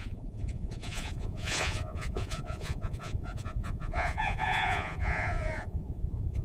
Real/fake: fake